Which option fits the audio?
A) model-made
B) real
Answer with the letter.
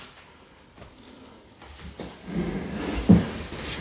B